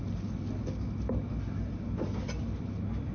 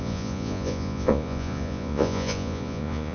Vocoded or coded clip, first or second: second